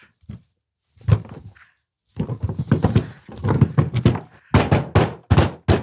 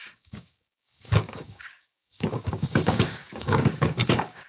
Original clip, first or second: first